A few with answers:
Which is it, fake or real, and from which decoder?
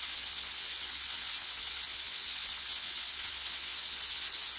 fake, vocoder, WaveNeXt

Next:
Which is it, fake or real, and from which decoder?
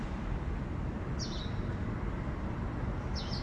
real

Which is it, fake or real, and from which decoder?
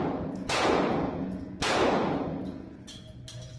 fake, vocoder, Vocos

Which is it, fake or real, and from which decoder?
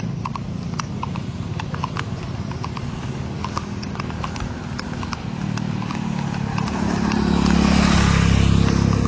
real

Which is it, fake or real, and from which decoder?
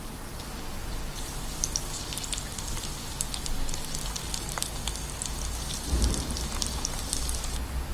real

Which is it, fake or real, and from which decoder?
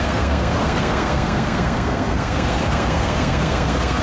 fake, codec, SNAC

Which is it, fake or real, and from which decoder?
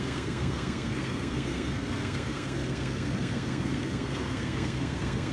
fake, codec, SNAC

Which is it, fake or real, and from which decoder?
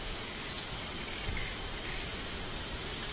real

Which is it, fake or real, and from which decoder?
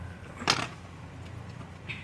real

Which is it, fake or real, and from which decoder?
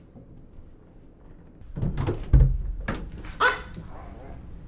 real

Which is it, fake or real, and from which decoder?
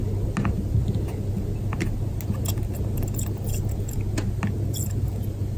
real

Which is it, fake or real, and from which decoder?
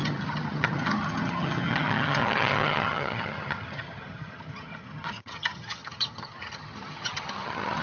fake, vocoder, HiFi-GAN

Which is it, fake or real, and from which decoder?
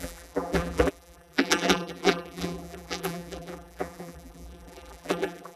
fake, vocoder, BigVGAN v2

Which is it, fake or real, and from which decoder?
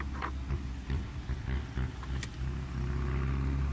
real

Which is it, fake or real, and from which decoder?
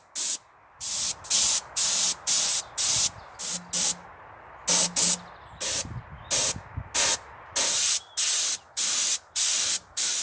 real